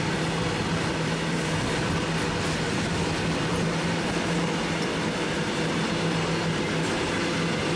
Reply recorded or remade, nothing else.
recorded